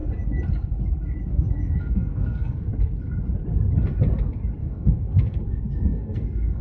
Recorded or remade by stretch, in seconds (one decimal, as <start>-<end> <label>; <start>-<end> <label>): 0.0-1.3 recorded; 1.3-2.7 remade; 2.7-4.6 recorded; 4.6-6.6 remade